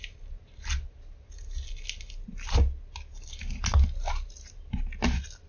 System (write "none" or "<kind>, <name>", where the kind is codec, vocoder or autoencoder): none